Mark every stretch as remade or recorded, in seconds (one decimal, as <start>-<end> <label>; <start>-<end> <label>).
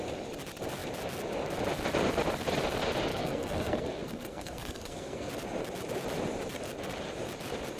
0.0-3.1 recorded; 3.1-5.3 remade; 5.3-7.8 recorded